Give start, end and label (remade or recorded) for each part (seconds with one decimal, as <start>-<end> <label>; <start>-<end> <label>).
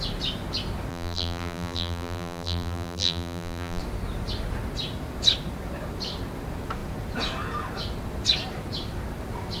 0.0-0.9 recorded; 0.9-3.8 remade; 3.8-9.6 recorded